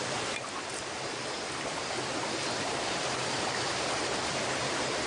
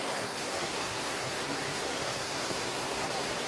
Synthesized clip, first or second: second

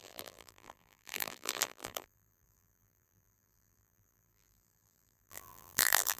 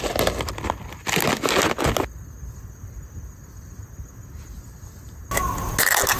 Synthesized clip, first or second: first